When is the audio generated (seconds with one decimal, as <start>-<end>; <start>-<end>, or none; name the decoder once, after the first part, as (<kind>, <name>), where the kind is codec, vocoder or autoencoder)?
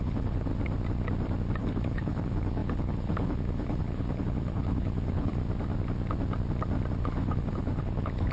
0.0-0.5 (codec, HILCodec); 1.6-5.4; 7.0-8.3